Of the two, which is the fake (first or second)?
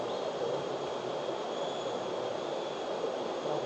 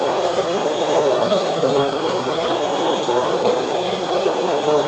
second